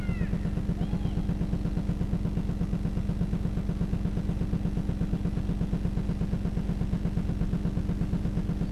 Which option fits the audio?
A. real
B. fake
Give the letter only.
A